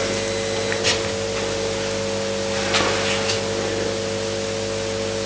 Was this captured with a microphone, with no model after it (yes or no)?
yes